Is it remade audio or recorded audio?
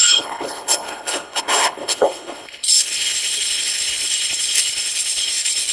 remade